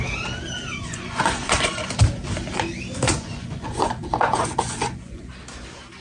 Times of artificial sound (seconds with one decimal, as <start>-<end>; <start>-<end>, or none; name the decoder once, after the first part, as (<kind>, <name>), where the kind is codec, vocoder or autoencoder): 0.7-1.9 (vocoder, Vocos); 3.1-5.3